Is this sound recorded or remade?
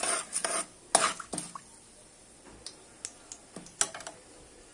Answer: recorded